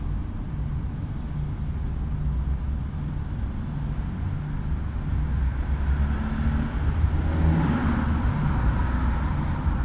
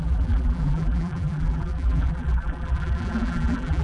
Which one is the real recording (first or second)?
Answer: first